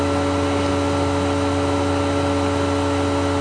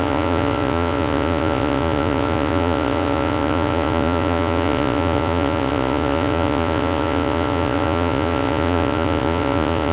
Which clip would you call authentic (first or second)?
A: first